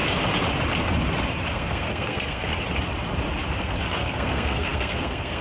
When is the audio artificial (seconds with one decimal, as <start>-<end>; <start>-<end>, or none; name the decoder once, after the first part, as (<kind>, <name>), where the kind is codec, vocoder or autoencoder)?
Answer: 1.5-2.5 (codec, SNAC); 3.6-5.4